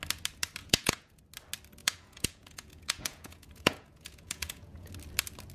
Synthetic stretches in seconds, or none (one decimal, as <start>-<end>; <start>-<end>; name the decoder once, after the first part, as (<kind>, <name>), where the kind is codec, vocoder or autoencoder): 0.6-1.2 (vocoder, Vocos); 1.8-4.9